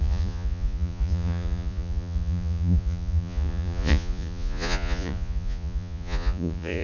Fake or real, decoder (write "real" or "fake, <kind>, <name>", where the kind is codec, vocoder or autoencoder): fake, vocoder, Vocos